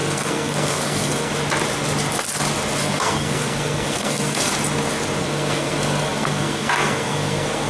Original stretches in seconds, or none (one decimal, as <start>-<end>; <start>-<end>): 1.3-2.8; 4.5-5.2